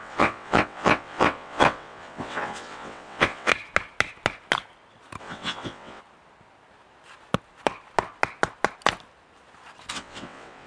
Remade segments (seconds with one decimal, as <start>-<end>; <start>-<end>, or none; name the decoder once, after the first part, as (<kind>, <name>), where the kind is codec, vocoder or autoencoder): 0.0-3.5 (vocoder, WaveNeXt); 5.2-6.0; 9.9-10.7